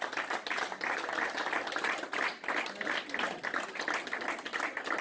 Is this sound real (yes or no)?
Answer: yes